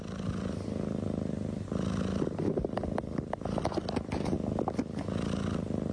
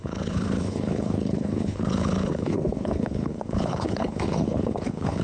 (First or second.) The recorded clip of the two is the first